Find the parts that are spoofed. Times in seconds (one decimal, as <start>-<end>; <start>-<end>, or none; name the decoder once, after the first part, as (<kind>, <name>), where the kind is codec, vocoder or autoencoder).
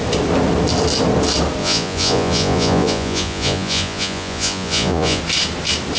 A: 1.6-5.2 (vocoder, Vocos)